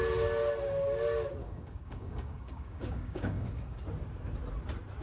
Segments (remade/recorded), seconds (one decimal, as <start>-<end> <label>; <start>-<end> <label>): 0.0-1.4 recorded; 1.4-3.8 remade; 3.8-5.0 recorded